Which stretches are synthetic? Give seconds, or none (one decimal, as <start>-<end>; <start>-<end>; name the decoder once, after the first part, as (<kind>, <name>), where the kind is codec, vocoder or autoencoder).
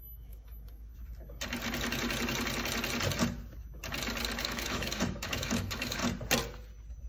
0.0-0.9 (autoencoder, DAC-VAE); 4.4-6.0